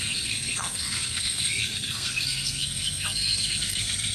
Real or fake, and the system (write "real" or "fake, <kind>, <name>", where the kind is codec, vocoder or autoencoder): fake, codec, SNAC